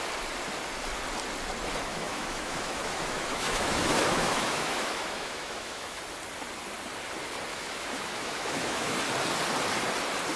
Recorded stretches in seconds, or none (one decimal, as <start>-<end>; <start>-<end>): 0.0-1.9; 6.0-7.5; 9.0-10.4